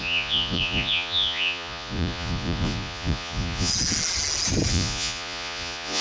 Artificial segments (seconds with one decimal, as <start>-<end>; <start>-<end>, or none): 0.0-3.7; 4.7-6.0